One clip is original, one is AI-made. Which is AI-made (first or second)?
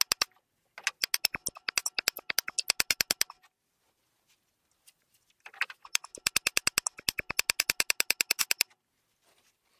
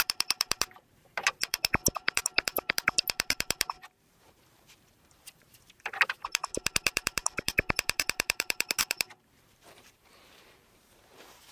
second